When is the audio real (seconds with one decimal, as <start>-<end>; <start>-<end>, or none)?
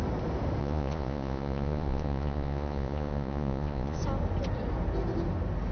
0.0-0.6; 4.0-5.7